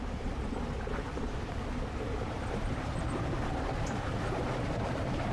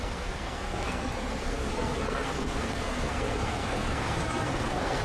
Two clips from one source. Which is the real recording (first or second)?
first